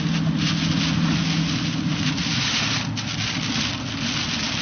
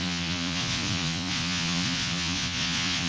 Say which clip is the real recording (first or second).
first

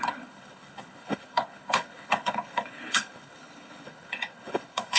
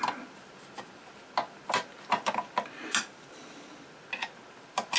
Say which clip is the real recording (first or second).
second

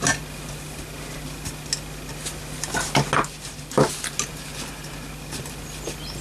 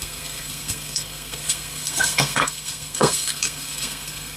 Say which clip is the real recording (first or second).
first